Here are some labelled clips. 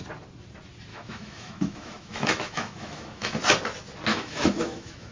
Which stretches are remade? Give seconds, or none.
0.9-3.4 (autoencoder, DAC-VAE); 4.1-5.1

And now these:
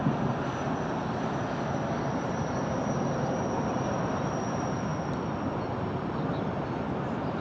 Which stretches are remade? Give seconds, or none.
none

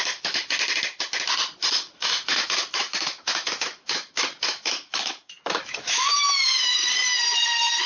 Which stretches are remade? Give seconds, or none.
0.0-0.4 (autoencoder, DAC-VAE); 1.7-6.8

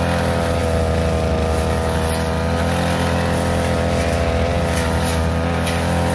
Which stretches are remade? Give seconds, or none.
none

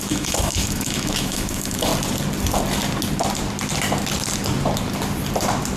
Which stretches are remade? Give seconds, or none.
0.0-1.9 (autoencoder, DAC-VAE)

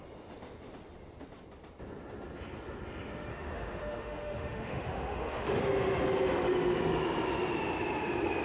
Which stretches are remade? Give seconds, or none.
3.3-5.6 (autoencoder, DAC-VAE)

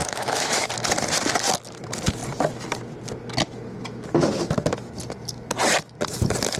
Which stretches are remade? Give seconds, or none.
0.0-0.7 (autoencoder, DAC-VAE)